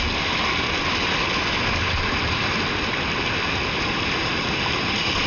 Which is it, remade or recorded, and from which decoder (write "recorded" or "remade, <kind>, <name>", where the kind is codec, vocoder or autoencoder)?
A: recorded